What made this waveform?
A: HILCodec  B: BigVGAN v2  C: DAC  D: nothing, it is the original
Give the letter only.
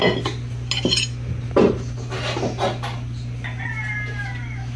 D